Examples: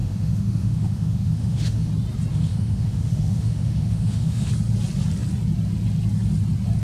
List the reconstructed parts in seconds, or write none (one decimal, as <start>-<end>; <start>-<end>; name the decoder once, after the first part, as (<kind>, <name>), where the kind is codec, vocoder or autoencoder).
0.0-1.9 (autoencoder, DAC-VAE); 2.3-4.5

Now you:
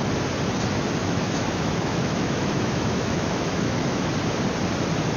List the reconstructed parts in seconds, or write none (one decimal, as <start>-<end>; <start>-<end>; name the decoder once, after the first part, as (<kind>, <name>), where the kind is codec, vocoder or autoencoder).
1.0-4.1 (autoencoder, DAC-VAE)

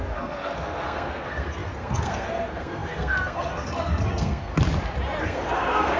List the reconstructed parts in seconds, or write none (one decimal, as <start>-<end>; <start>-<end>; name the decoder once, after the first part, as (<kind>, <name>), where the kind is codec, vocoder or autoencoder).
0.0-4.5 (codec, SNAC); 5.2-6.0

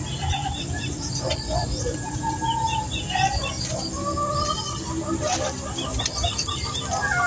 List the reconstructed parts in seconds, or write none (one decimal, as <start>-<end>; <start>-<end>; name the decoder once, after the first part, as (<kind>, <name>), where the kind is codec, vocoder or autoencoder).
0.4-1.1 (vocoder, BigVGAN v2); 1.6-2.2

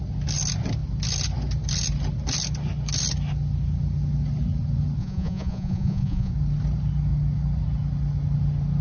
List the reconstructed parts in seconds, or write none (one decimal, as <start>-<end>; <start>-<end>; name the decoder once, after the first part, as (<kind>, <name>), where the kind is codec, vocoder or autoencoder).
5.0-6.3 (vocoder, Vocos)

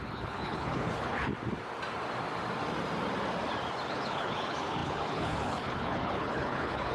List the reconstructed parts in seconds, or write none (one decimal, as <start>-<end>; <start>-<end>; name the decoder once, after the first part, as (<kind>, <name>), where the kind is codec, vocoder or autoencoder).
0.0-1.3 (codec, HILCodec); 3.9-6.9